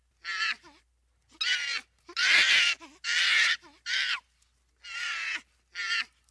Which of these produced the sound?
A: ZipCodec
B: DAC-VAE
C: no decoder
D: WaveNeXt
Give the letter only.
C